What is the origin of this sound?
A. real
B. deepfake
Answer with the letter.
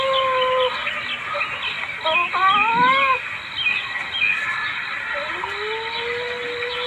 A